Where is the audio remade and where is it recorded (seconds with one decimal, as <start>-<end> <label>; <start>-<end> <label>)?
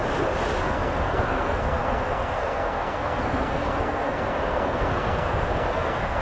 0.0-0.7 recorded; 0.7-6.2 remade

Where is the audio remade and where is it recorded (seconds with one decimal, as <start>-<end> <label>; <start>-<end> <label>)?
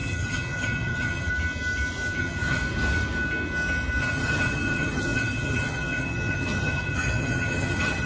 0.0-1.3 remade; 1.3-2.2 recorded; 2.2-2.6 remade; 2.6-4.0 recorded; 4.0-8.1 remade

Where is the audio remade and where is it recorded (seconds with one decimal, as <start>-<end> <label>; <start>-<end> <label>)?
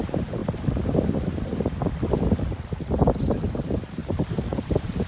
0.0-0.4 remade; 0.4-3.5 recorded; 3.5-5.1 remade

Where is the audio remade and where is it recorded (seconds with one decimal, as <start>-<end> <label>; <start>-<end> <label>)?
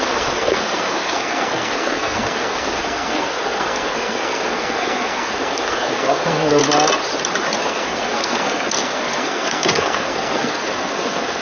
0.0-6.6 remade; 6.6-7.6 recorded; 7.6-11.4 remade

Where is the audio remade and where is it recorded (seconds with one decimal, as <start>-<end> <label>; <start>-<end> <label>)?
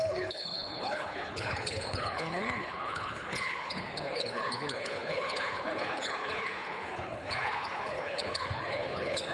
0.0-9.3 remade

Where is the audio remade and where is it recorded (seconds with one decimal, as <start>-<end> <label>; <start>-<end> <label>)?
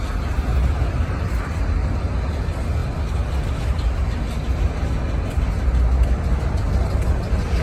0.0-7.6 recorded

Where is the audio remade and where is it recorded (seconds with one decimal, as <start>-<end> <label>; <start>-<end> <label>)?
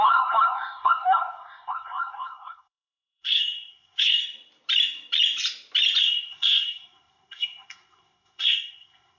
0.0-4.2 remade; 4.2-6.0 recorded; 6.0-9.2 remade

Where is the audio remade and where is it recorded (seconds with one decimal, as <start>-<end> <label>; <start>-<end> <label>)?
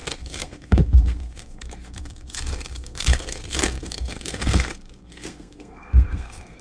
0.0-6.6 remade